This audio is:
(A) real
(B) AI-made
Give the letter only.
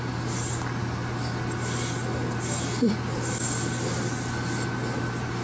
A